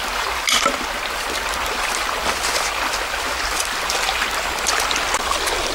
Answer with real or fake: real